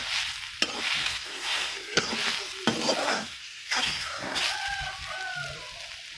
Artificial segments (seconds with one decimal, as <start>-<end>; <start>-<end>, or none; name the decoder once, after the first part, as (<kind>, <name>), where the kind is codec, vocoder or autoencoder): 1.0-2.1 (codec, SNAC); 3.0-4.4